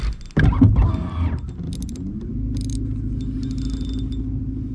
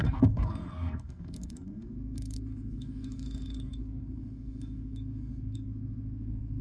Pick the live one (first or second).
first